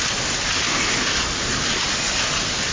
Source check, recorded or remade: recorded